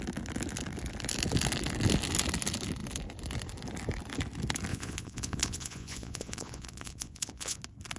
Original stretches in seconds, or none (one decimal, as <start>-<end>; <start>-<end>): 0.0-4.7; 7.6-8.0